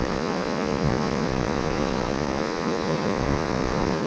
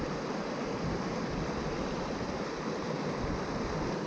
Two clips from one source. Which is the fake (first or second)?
first